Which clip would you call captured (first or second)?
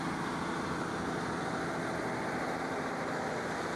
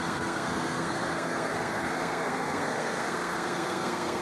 first